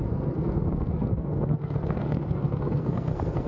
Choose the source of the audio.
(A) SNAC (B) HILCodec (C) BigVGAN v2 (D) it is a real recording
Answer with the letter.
A